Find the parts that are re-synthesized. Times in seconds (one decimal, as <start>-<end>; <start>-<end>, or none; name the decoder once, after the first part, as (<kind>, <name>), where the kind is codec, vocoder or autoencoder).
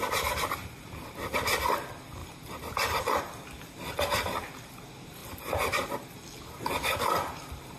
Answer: 2.2-3.2 (vocoder, BigVGAN v2); 5.2-6.1